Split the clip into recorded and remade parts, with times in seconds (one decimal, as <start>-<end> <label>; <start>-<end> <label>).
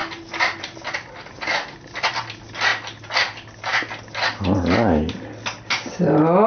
0.0-6.5 recorded